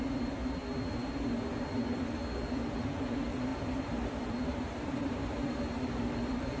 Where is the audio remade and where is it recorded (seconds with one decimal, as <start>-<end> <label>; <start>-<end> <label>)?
0.0-3.5 recorded; 3.5-5.6 remade; 5.6-6.6 recorded